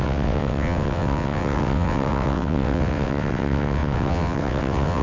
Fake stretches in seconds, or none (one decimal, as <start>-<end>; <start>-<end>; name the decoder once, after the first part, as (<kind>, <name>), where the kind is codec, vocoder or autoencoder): 0.0-5.0 (vocoder, WaveNeXt)